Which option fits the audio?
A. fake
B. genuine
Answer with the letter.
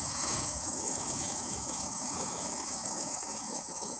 A